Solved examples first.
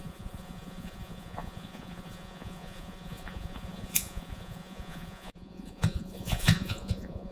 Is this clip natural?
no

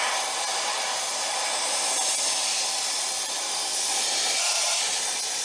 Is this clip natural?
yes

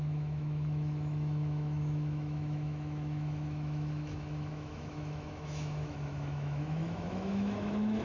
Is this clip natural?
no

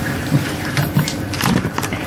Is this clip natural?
no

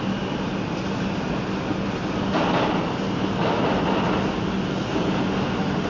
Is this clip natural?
yes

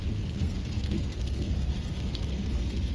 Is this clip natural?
no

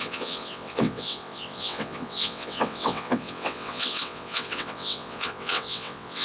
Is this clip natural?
no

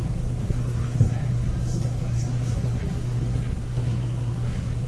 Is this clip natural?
no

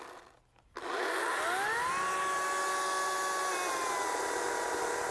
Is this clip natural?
yes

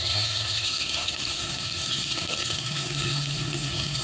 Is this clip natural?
no